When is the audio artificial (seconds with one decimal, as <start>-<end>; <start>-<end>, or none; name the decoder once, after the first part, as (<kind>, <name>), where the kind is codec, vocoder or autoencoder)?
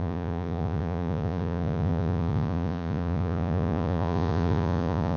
0.0-5.2 (vocoder, Vocos)